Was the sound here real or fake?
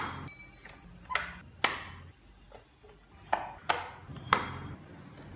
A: real